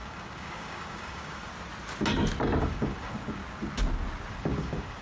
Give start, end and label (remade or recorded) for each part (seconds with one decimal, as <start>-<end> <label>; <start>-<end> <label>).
0.0-1.5 remade; 1.5-2.6 recorded; 2.6-3.4 remade; 3.4-4.3 recorded; 4.3-5.0 remade